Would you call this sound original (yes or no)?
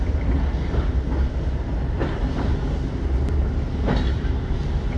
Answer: yes